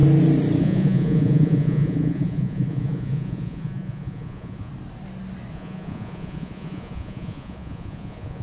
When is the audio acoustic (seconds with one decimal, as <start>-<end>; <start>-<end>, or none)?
0.0-0.6; 4.7-5.5